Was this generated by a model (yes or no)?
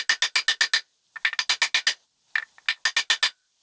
no